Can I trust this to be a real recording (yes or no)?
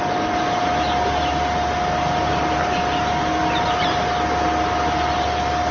yes